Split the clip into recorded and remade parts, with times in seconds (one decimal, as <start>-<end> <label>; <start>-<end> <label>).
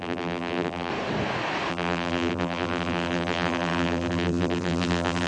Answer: 0.0-0.9 remade; 0.9-1.7 recorded; 1.7-5.3 remade